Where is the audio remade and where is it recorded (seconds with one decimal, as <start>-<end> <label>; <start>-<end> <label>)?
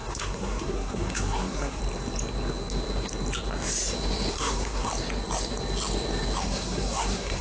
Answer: 0.0-1.8 remade; 1.8-4.3 recorded; 4.3-4.9 remade; 4.9-6.4 recorded; 6.4-7.4 remade